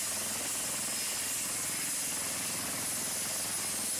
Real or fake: real